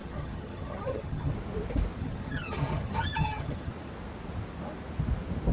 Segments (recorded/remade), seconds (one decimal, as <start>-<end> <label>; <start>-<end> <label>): 0.0-1.3 remade; 1.3-2.0 recorded; 2.0-3.7 remade; 3.7-5.5 recorded